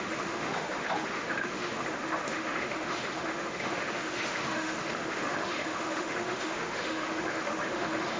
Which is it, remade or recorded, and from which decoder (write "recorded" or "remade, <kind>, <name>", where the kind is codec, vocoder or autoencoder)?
remade, autoencoder, DAC-VAE